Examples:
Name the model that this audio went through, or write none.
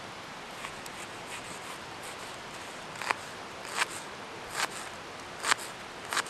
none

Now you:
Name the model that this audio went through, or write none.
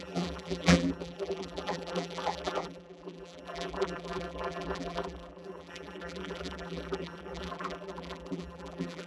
vocoder, BigVGAN v2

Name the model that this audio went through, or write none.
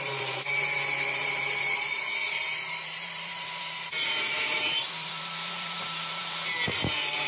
vocoder, BigVGAN v2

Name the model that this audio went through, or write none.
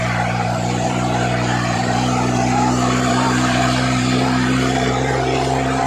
vocoder, BigVGAN v2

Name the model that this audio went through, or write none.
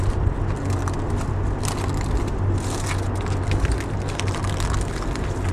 none